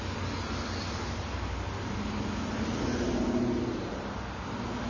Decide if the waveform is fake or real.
real